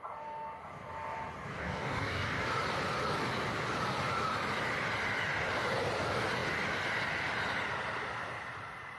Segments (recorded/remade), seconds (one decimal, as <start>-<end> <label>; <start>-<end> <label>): 0.0-1.5 recorded; 1.5-2.3 remade; 2.3-9.0 recorded